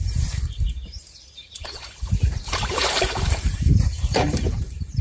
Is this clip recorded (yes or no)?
no